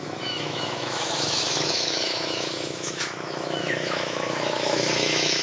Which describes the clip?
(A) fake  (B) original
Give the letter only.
A